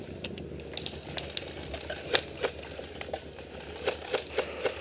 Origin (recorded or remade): recorded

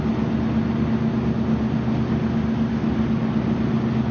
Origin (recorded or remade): recorded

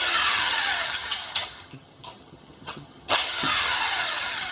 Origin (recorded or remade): remade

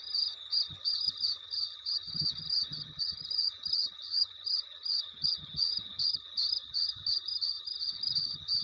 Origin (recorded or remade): remade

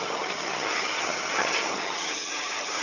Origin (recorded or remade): remade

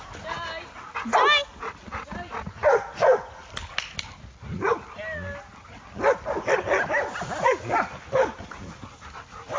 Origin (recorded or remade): recorded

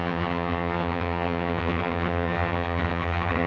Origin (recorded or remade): remade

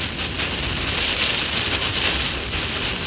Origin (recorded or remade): recorded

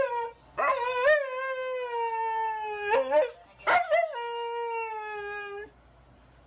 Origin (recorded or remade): recorded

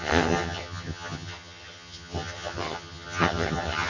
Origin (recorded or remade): remade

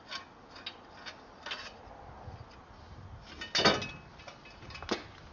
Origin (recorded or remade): recorded